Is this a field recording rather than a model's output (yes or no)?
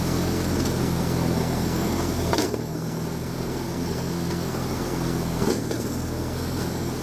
no